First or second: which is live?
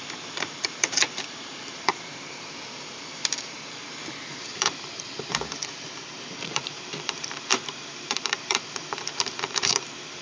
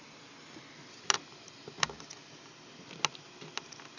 second